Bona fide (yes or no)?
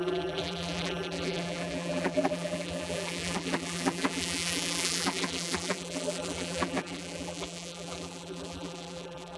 no